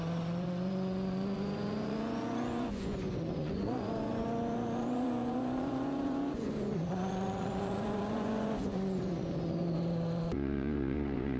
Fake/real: fake